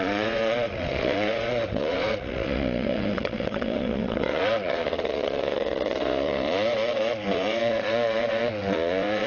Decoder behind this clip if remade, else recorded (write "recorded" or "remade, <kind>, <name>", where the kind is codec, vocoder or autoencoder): remade, vocoder, WaveNeXt